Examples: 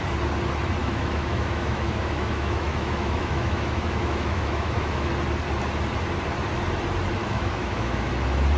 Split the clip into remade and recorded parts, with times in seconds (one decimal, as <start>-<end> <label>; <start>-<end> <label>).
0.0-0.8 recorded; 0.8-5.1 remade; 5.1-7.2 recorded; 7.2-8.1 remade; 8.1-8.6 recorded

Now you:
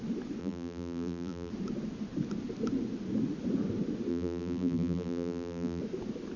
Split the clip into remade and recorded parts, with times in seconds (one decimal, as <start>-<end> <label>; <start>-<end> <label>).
0.0-0.4 recorded; 0.4-1.5 remade; 1.5-4.1 recorded; 4.1-5.8 remade; 5.8-6.4 recorded

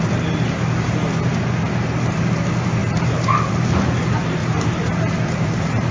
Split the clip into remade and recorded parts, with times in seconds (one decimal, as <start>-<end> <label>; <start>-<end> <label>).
0.0-2.8 recorded; 2.8-3.9 remade; 3.9-4.4 recorded; 4.4-5.9 remade

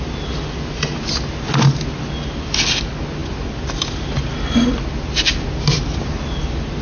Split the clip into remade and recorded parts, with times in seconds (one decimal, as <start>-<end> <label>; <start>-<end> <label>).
0.0-6.8 recorded

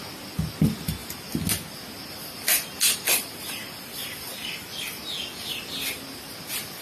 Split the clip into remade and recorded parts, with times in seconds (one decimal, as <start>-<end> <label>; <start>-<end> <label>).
0.0-6.8 recorded

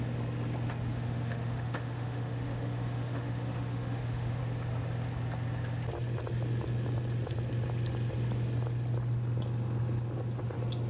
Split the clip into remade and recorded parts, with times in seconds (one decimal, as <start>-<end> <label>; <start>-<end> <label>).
0.0-0.9 recorded; 0.9-4.4 remade; 4.4-10.9 recorded